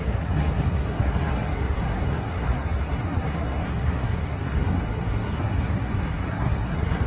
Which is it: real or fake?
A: fake